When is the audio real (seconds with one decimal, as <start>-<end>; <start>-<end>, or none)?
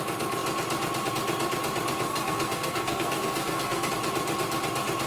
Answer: 0.0-2.1; 3.9-5.1